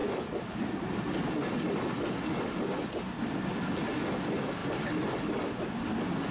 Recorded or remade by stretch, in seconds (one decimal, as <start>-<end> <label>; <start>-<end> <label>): 0.0-6.3 recorded